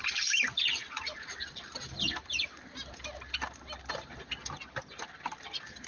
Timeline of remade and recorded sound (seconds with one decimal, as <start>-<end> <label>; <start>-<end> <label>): 0.0-5.9 recorded